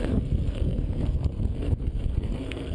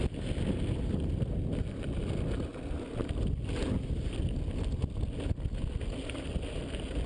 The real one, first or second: second